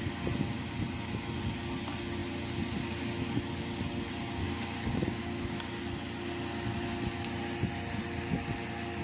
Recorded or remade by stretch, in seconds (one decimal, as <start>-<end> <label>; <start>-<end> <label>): 0.0-4.4 recorded; 4.4-5.8 remade; 5.8-9.0 recorded